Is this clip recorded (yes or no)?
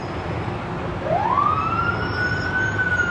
yes